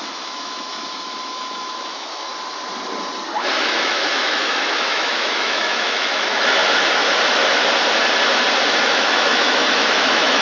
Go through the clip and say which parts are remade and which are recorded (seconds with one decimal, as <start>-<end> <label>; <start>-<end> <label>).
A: 0.0-2.3 remade; 2.3-3.5 recorded; 3.5-6.6 remade; 6.6-8.8 recorded; 8.8-10.4 remade